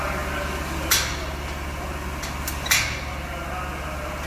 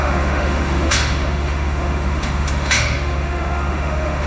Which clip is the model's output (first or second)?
second